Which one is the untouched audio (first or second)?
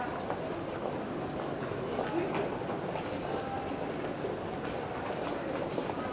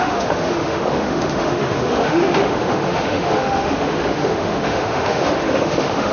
first